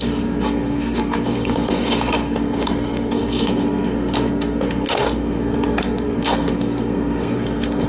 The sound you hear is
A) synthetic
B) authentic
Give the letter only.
A